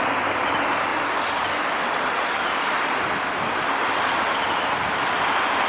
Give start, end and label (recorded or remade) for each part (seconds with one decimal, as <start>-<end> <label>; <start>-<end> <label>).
0.0-5.7 recorded